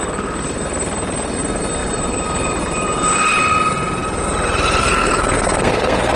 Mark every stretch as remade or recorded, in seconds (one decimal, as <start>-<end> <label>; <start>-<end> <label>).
0.0-4.8 recorded; 4.8-6.2 remade